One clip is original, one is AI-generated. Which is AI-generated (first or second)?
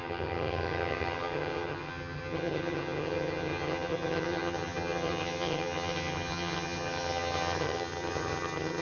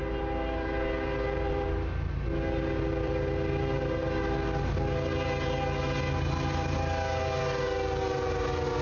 first